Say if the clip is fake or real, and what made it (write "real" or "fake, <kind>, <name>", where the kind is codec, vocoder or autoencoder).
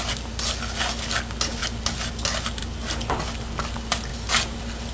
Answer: real